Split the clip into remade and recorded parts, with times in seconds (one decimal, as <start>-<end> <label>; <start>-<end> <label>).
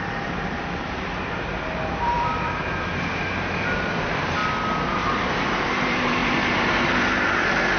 0.0-4.4 remade; 4.4-5.0 recorded; 5.0-7.8 remade